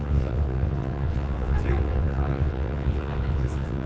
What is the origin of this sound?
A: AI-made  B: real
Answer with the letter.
A